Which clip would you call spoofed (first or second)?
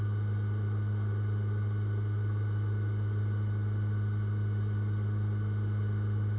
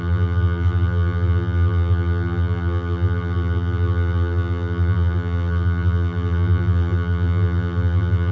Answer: second